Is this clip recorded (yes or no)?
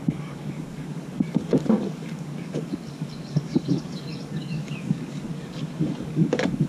no